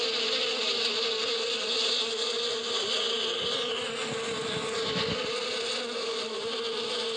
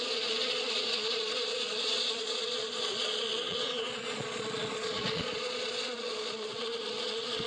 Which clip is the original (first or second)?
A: first